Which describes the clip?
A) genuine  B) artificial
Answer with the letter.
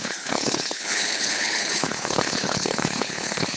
B